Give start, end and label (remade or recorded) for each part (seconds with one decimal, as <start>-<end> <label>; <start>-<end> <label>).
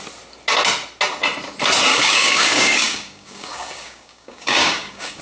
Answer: 0.0-1.9 recorded; 1.9-5.2 remade